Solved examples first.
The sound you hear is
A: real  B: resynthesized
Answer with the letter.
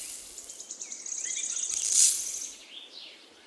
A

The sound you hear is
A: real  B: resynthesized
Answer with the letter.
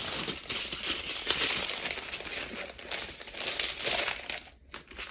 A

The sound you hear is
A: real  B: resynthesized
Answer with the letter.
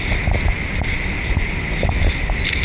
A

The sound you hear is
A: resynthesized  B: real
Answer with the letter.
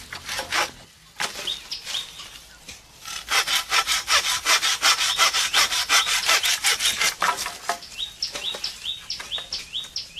B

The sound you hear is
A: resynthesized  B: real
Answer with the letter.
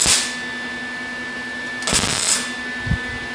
B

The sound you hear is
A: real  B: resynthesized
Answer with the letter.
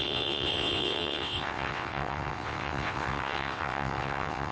B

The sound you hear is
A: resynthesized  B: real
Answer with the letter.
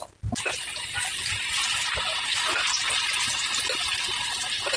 B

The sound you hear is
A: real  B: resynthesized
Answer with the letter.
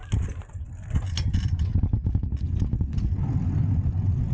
A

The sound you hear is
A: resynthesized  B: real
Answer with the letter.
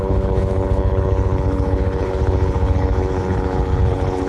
A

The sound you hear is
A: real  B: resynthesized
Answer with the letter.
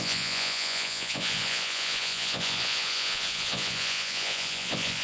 B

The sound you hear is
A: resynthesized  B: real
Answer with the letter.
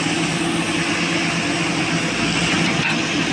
B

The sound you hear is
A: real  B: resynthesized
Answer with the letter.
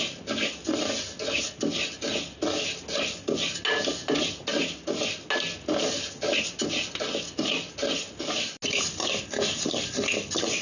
A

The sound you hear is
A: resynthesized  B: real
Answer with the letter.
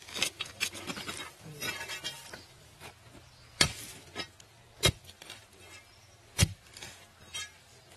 B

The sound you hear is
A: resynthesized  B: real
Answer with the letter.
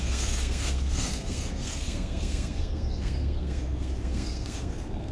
A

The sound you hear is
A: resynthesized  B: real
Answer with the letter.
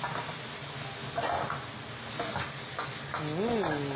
B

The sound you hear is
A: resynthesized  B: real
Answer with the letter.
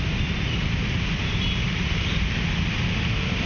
A